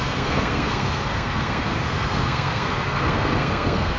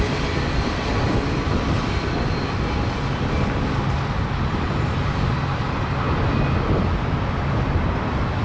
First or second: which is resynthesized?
first